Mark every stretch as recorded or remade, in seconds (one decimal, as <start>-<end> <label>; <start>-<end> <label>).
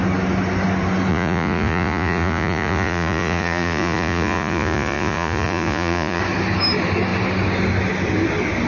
0.0-1.1 recorded; 1.1-6.2 remade; 6.2-8.7 recorded